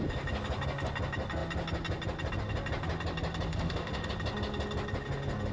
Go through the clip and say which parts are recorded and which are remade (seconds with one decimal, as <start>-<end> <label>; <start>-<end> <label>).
0.0-3.5 recorded; 3.5-4.1 remade; 4.1-5.5 recorded